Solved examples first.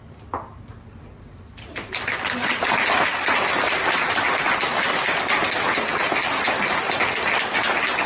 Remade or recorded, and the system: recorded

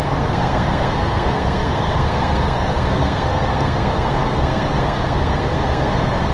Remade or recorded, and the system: remade, codec, SNAC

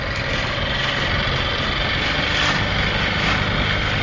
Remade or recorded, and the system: recorded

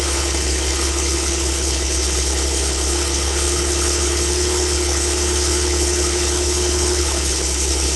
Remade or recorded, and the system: remade, codec, HILCodec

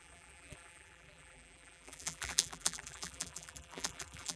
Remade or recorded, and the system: remade, vocoder, BigVGAN v2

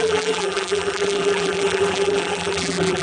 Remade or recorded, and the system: remade, vocoder, BigVGAN v2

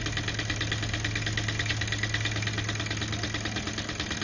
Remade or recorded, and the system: recorded